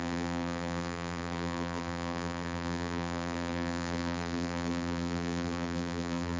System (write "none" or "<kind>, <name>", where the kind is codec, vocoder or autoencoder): vocoder, BigVGAN v2